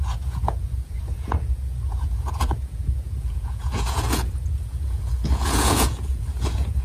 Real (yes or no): no